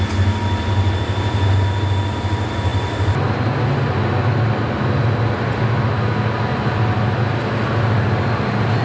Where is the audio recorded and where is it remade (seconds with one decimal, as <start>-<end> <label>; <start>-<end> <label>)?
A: 0.0-8.8 recorded

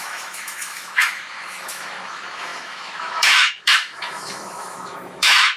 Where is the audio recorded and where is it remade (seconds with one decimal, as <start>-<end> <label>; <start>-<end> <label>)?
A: 0.0-5.6 remade